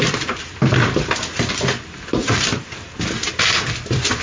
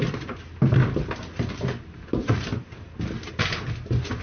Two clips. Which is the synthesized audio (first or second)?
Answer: first